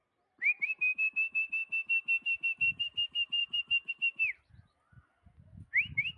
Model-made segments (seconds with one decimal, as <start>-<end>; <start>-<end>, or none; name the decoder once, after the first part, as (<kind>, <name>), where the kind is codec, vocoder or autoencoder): none